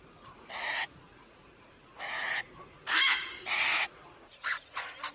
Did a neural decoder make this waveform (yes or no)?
yes